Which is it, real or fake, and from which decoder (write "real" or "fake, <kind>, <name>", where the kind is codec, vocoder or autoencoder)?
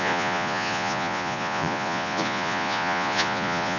fake, vocoder, Vocos